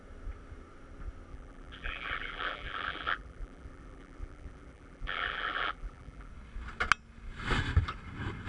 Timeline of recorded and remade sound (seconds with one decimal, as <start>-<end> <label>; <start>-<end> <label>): 0.0-1.3 recorded; 1.3-6.3 remade; 6.3-8.5 recorded